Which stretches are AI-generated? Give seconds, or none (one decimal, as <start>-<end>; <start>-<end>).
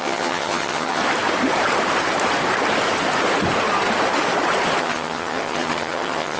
0.0-1.0; 4.8-6.4